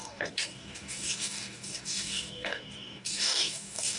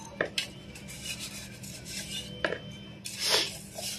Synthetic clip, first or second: first